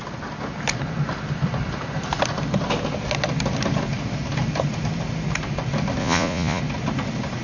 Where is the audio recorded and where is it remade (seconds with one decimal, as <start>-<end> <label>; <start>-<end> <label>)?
0.0-6.0 recorded; 6.0-6.6 remade; 6.6-7.4 recorded